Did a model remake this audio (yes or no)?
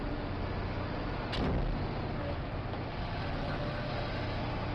no